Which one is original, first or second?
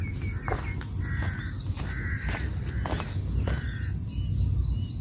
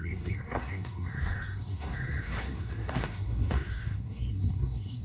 first